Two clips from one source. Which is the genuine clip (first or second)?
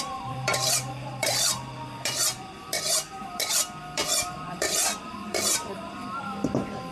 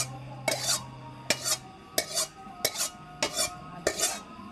second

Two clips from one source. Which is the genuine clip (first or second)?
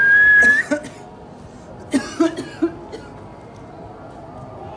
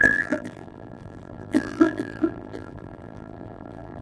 first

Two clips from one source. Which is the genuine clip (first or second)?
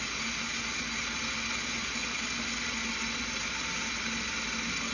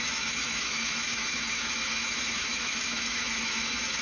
first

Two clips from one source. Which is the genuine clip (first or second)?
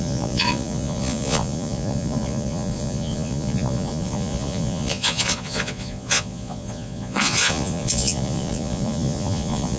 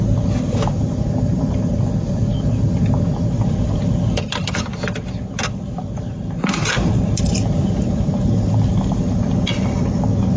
second